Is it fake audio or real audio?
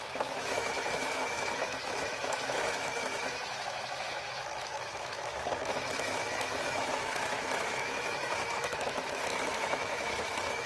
fake